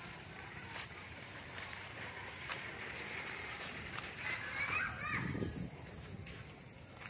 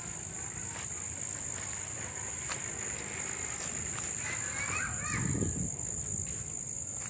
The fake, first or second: first